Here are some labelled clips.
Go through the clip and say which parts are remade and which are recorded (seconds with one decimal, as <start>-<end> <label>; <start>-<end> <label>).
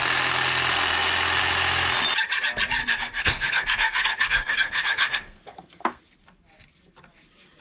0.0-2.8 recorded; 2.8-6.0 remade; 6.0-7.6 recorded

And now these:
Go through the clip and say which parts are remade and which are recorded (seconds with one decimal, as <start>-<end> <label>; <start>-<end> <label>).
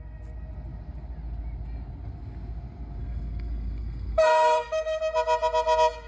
0.0-3.0 recorded; 3.0-5.0 remade; 5.0-6.1 recorded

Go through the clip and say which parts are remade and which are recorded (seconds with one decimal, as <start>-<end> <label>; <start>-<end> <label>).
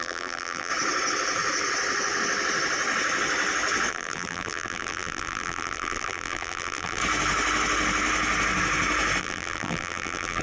0.0-0.7 remade; 0.7-3.9 recorded; 3.9-7.0 remade; 7.0-9.2 recorded; 9.2-10.4 remade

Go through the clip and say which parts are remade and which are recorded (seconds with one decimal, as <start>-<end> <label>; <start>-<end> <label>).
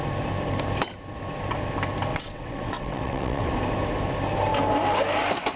0.0-2.1 recorded; 2.1-3.5 remade; 3.5-5.6 recorded